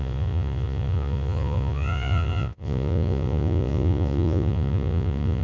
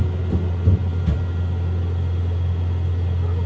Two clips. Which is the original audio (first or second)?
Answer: second